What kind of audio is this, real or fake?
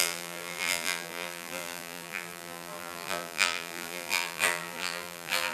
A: fake